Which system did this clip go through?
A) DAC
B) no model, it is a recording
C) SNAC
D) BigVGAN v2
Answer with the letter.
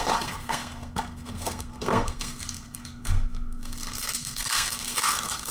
C